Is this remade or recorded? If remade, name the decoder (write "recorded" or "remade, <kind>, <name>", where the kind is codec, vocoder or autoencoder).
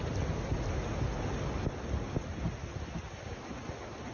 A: recorded